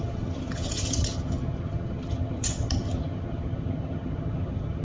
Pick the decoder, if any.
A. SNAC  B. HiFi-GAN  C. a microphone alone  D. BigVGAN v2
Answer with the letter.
B